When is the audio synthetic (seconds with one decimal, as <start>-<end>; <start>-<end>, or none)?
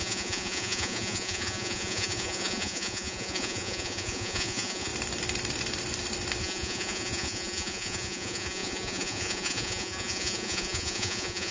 0.0-4.9; 6.4-11.5